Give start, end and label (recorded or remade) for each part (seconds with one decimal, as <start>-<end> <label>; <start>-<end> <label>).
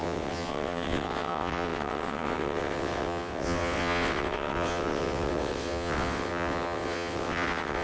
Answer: 0.0-7.8 remade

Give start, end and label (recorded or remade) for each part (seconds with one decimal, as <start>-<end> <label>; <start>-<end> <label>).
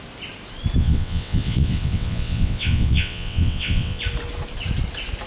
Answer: 0.0-0.8 recorded; 0.8-4.0 remade; 4.0-5.3 recorded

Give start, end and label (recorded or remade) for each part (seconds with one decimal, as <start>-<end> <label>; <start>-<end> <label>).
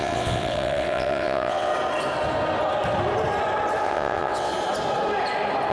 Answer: 0.0-1.7 remade; 1.7-3.8 recorded; 3.8-4.5 remade; 4.5-5.7 recorded